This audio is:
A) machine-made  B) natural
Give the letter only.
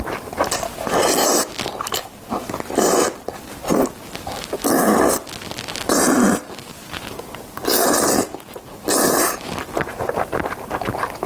B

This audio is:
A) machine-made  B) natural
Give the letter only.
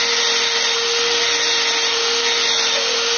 B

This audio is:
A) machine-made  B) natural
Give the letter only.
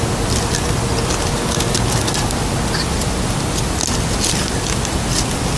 B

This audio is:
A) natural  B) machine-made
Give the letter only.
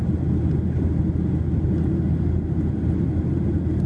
A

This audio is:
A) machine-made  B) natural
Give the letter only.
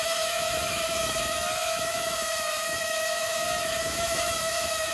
A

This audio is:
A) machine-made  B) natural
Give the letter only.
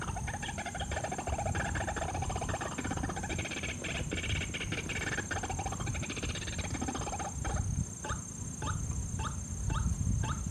B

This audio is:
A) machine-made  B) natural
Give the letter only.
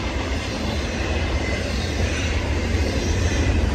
A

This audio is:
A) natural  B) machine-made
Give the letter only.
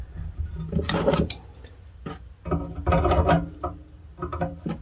A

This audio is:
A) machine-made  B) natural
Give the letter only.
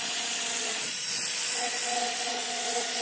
A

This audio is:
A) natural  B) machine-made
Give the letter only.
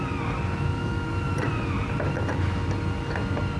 A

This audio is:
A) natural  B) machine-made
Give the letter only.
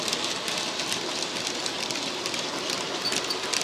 A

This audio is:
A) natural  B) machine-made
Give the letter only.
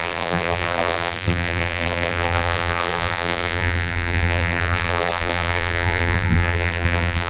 B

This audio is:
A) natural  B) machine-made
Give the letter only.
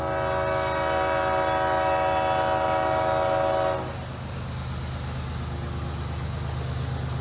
A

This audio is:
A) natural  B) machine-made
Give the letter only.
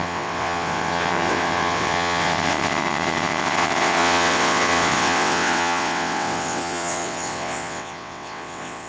B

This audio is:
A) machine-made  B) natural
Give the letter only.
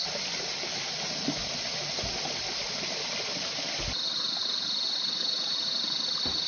B